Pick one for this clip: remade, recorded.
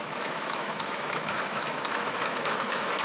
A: remade